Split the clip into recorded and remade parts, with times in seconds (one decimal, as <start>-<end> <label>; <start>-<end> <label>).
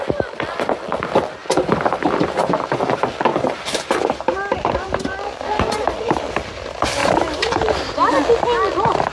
0.0-1.4 recorded; 1.4-2.5 remade; 2.5-3.3 recorded; 3.3-6.3 remade; 6.3-7.0 recorded; 7.0-8.1 remade; 8.1-9.1 recorded